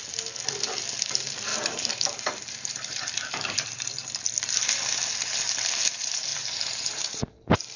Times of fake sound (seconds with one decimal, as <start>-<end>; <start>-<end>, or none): 1.5-4.1; 6.3-7.0